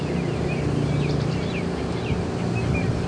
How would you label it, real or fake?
real